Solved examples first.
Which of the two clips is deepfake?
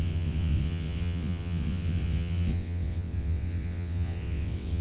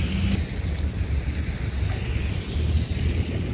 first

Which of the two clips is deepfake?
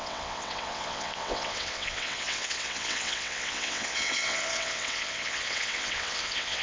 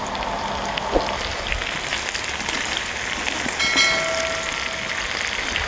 first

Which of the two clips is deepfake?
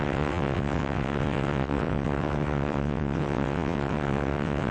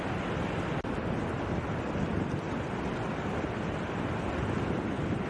first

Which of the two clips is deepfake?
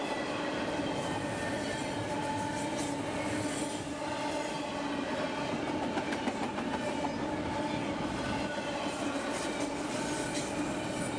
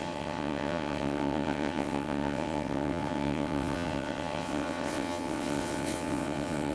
second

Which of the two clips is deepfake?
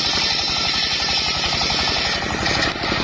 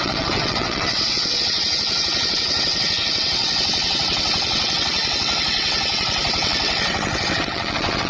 second